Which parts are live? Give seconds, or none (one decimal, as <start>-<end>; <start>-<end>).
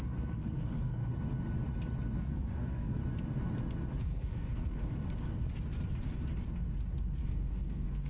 1.0-2.2; 3.0-4.0; 5.0-7.2